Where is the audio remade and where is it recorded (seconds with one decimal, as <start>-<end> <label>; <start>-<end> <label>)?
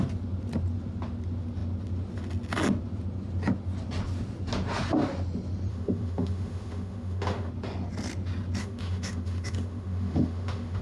0.0-5.7 recorded; 5.7-7.5 remade; 7.5-8.6 recorded; 8.6-10.8 remade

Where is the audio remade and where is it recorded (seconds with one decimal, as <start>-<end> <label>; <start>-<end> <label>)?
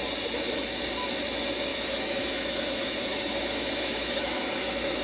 0.0-1.7 recorded; 1.7-5.0 remade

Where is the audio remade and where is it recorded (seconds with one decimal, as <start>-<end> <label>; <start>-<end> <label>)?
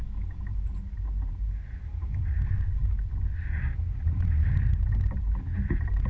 0.0-6.1 recorded